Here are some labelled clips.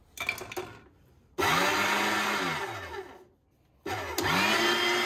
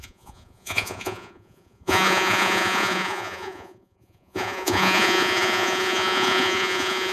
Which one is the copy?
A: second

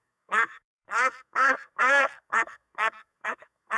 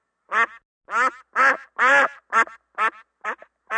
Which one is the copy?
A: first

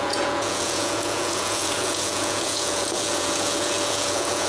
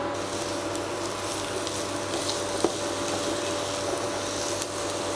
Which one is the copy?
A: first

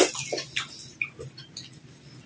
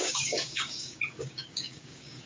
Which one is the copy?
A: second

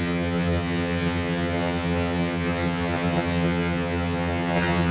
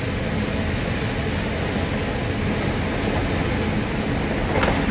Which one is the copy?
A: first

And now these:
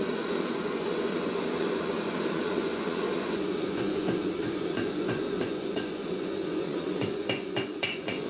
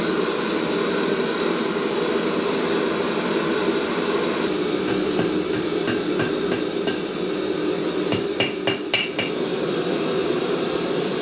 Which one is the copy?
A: first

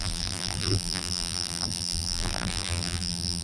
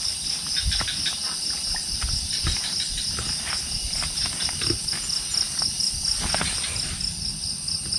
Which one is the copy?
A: first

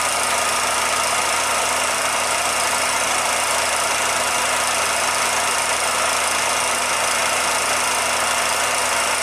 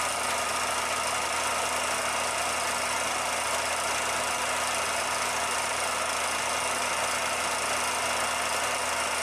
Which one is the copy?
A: first